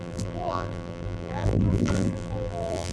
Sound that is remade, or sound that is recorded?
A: remade